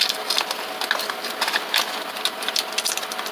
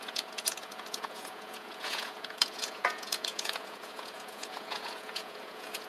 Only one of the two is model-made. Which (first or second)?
second